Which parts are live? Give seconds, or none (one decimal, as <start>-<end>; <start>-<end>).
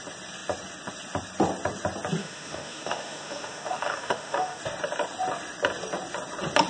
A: 0.0-2.2; 4.6-6.7